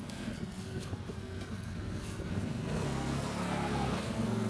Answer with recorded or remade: remade